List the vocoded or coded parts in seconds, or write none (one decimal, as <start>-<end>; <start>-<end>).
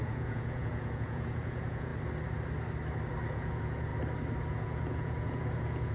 0.0-1.9; 3.3-3.9; 4.5-5.9